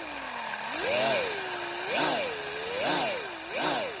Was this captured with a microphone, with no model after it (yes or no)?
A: yes